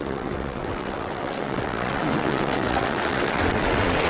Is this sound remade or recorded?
remade